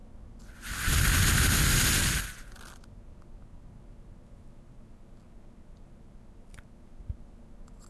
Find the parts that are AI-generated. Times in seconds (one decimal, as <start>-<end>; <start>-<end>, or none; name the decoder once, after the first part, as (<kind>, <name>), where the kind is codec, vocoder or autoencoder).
none

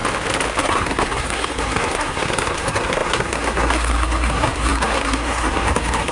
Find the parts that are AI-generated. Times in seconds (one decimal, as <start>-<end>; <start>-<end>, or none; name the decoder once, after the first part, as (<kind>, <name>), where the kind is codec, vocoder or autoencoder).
0.6-6.1 (codec, SNAC)

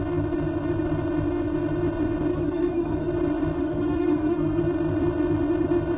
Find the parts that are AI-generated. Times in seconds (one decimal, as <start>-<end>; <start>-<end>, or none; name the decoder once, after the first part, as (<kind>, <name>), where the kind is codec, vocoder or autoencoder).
2.3-3.1 (codec, SNAC); 3.6-4.6